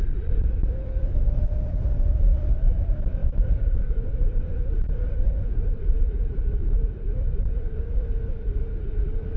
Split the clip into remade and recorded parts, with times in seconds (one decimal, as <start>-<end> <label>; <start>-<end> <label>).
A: 0.0-9.4 recorded